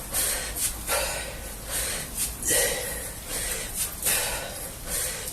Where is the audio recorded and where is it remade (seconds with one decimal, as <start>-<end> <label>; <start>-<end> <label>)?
0.0-5.3 recorded